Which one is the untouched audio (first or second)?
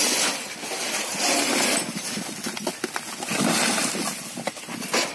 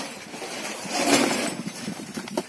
first